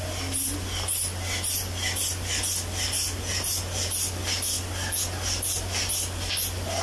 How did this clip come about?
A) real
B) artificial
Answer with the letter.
A